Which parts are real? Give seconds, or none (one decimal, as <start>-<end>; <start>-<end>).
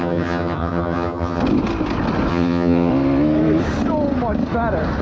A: 1.4-2.3; 2.9-5.0